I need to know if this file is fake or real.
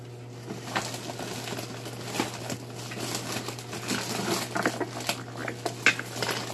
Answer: real